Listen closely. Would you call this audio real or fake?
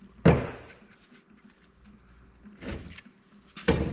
real